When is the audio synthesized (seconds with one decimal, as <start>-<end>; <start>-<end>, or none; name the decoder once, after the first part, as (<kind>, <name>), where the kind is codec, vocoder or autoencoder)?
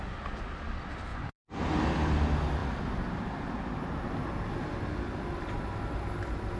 1.1-1.6 (vocoder, Vocos)